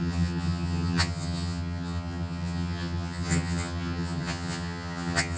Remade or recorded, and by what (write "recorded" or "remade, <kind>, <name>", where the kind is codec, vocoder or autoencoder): remade, vocoder, HiFi-GAN